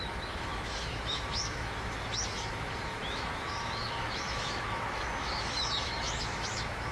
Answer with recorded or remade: remade